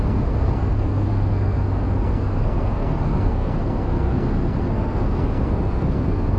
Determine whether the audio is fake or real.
fake